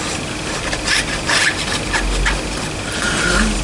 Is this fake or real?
real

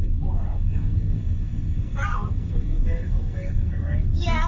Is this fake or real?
fake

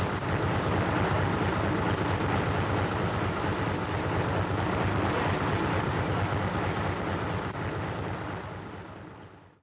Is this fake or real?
real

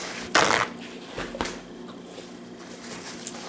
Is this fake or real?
real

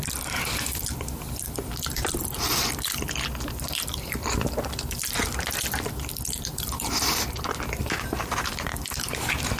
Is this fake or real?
fake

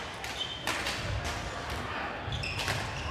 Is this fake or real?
real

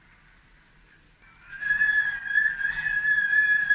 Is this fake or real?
real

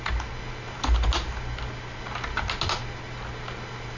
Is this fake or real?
real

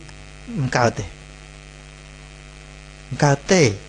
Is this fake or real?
real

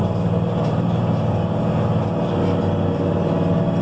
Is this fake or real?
real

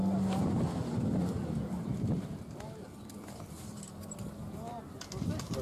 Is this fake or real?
real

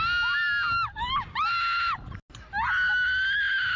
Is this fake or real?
real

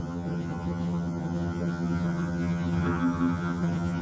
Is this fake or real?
fake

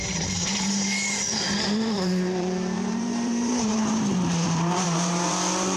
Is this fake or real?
fake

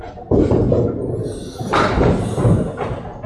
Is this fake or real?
real